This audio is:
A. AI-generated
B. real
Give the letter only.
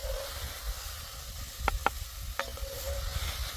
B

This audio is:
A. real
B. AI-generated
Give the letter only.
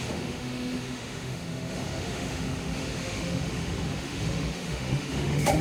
B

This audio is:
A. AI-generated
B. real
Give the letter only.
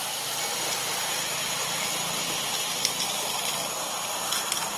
B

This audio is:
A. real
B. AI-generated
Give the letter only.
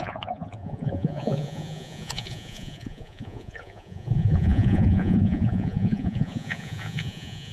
B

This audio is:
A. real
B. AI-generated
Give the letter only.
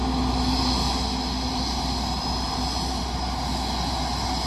A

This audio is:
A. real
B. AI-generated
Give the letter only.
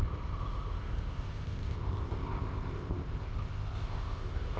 B